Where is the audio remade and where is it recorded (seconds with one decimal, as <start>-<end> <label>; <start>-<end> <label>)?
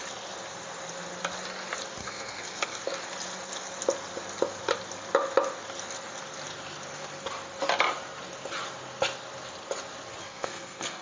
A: 0.0-2.0 recorded; 2.0-2.8 remade; 2.8-10.2 recorded; 10.2-11.0 remade